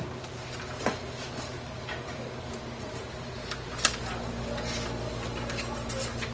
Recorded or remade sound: recorded